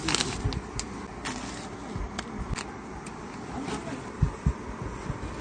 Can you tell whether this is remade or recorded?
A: recorded